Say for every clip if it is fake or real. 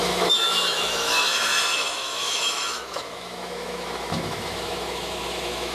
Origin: fake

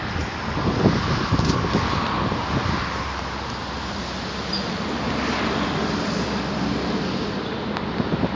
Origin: real